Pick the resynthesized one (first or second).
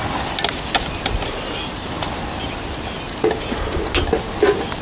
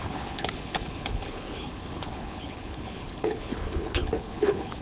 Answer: second